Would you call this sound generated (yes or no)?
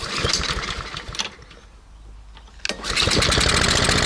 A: no